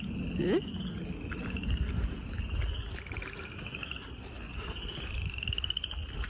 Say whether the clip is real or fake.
real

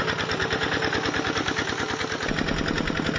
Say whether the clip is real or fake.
real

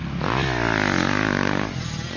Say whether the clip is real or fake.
real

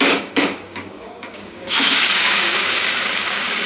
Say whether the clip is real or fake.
fake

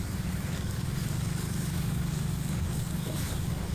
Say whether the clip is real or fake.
fake